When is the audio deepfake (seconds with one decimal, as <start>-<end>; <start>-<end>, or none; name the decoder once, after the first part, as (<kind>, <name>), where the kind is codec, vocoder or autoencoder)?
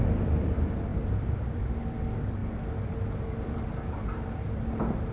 0.0-2.4 (vocoder, BigVGAN v2); 2.9-5.1